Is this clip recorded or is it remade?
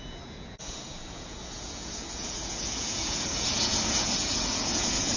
remade